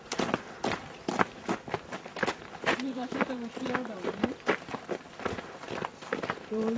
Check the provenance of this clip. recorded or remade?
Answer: remade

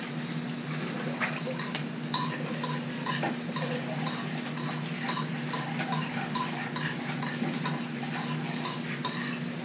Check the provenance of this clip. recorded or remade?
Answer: recorded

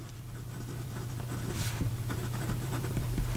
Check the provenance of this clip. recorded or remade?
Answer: remade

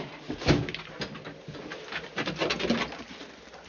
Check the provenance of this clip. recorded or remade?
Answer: recorded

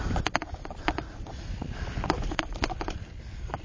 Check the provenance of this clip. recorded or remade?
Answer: recorded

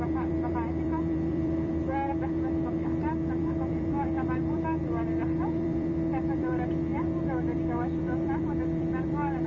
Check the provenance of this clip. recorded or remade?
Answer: remade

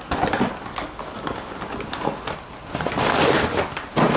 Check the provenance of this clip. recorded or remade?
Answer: recorded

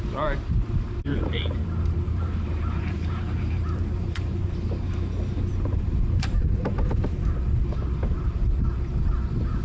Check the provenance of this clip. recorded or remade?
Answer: remade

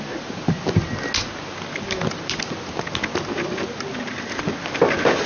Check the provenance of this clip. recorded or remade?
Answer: recorded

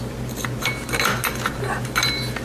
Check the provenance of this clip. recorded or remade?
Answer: recorded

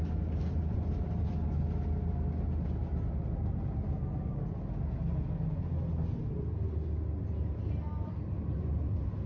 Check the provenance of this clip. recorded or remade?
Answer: recorded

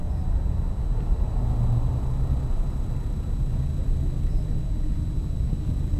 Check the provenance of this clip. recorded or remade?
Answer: recorded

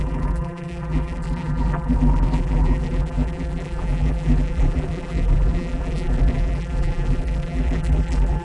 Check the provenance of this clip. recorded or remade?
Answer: remade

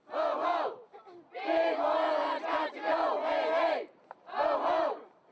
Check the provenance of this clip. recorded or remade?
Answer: remade